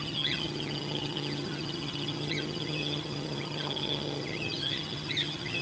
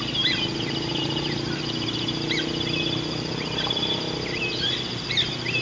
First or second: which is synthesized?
first